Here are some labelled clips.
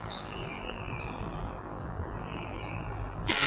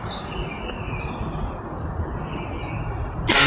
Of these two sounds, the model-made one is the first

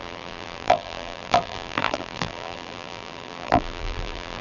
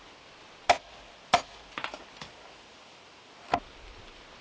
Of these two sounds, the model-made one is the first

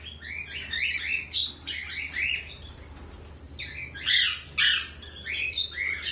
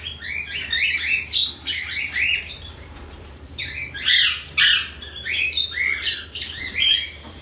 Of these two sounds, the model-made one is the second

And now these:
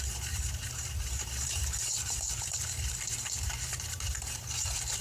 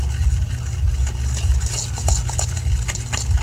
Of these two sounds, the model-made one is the first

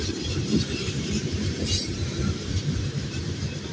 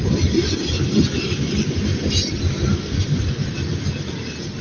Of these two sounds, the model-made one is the first